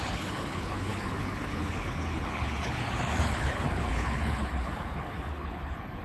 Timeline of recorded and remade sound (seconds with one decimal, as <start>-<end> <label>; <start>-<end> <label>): 0.0-6.0 remade